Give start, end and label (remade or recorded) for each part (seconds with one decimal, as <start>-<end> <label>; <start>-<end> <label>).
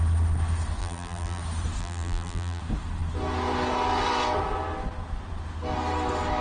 0.0-0.8 recorded; 0.8-1.4 remade; 1.4-1.8 recorded; 1.8-2.6 remade; 2.6-6.4 recorded